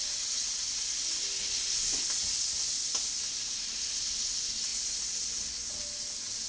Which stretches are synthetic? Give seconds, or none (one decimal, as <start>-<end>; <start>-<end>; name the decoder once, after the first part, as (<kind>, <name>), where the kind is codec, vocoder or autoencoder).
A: 2.9-3.7 (vocoder, BigVGAN v2)